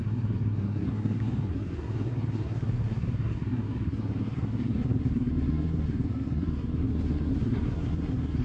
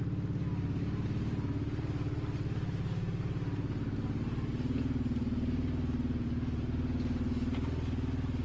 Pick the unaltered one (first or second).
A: second